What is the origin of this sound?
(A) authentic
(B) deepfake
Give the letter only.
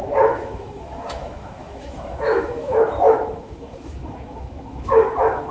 B